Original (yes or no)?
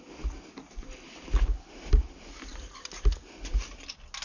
yes